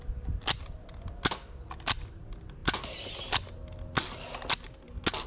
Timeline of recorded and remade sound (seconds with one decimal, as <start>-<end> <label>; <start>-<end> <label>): 0.0-5.3 recorded